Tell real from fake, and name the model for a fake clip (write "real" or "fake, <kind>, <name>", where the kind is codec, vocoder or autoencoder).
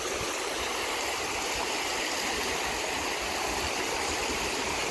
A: real